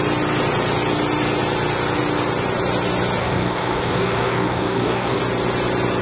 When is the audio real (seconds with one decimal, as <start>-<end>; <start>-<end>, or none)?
0.0-3.2; 5.2-6.0